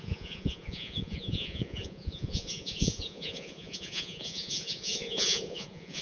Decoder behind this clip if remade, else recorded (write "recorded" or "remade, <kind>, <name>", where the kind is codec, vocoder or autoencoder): remade, vocoder, Vocos